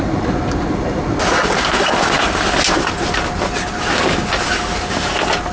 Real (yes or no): yes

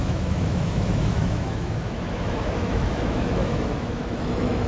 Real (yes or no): no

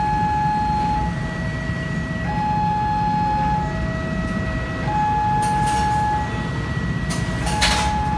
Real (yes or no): yes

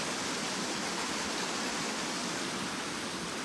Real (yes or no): yes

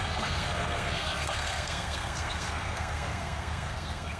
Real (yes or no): no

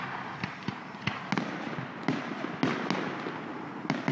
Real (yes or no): yes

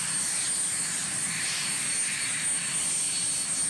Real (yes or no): yes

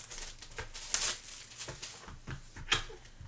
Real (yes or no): yes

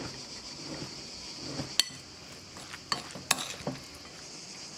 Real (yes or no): yes